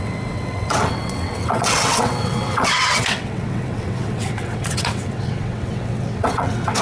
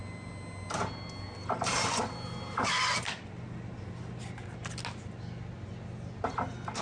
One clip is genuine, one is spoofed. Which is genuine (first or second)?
second